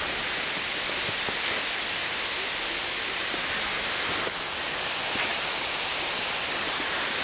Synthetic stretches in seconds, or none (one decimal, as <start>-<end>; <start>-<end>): none